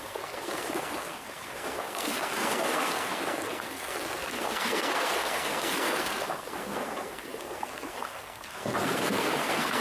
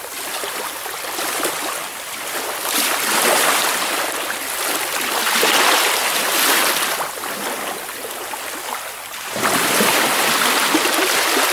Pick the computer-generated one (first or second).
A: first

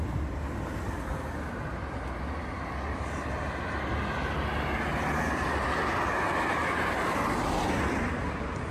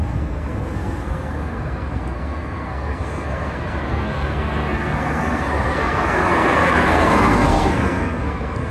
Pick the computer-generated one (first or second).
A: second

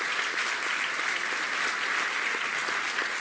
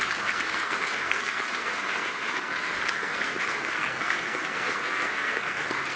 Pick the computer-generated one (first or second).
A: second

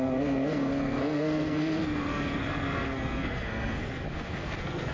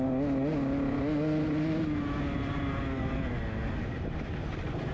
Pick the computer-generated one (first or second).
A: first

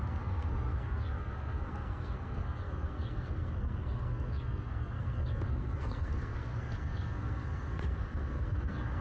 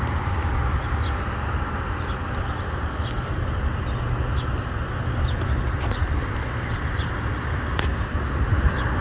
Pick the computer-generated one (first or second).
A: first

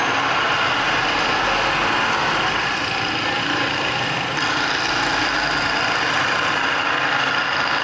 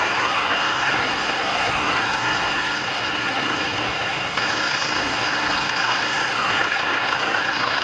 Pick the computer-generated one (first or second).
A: second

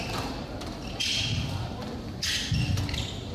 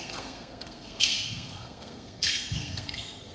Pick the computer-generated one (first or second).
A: second